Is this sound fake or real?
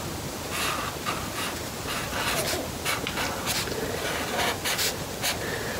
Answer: real